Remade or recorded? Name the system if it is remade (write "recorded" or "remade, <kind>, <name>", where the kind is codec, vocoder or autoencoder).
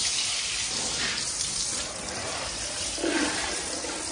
remade, vocoder, BigVGAN v2